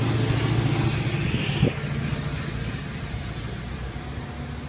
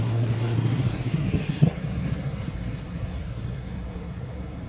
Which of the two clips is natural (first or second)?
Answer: first